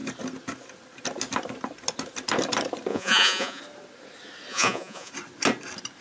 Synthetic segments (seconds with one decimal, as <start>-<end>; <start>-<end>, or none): 2.9-3.6; 4.5-5.1